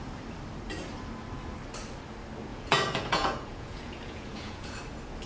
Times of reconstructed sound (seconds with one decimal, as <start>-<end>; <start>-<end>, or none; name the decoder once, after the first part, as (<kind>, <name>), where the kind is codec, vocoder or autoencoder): 2.5-4.8 (vocoder, Vocos)